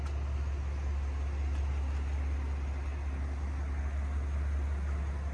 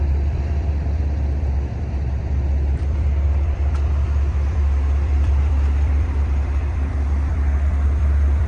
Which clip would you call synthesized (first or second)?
second